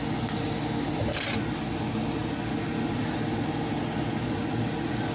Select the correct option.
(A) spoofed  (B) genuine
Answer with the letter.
B